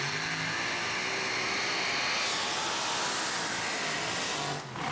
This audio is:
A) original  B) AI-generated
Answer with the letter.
A